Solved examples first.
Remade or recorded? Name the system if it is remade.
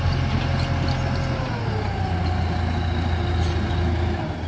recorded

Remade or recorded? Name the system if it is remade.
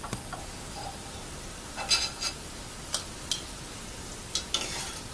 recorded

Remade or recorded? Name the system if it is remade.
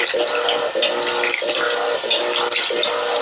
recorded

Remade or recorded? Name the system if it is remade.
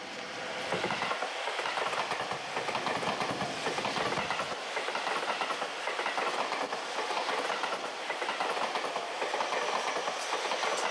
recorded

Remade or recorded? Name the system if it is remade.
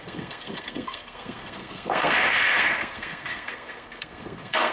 remade, codec, SNAC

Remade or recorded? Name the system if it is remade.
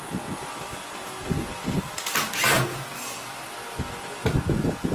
recorded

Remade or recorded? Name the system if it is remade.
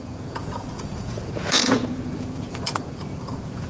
remade, vocoder, Vocos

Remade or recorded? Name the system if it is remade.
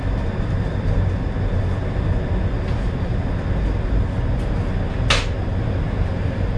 recorded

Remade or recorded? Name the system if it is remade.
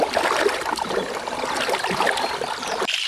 recorded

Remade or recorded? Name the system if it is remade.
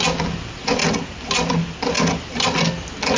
recorded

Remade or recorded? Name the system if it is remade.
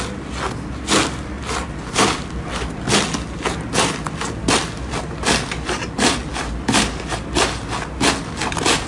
recorded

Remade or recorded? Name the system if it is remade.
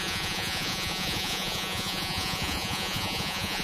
remade, vocoder, Vocos